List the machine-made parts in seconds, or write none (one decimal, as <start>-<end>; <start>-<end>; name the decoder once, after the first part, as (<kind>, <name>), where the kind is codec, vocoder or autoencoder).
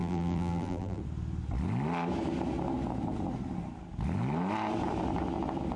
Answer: 0.0-1.0 (vocoder, BigVGAN v2)